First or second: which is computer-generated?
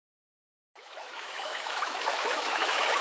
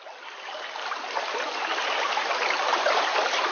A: first